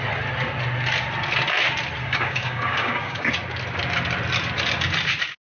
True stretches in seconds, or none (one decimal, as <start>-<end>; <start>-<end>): 0.0-2.0; 3.3-5.5